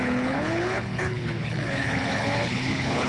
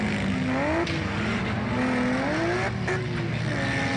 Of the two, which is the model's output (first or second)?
first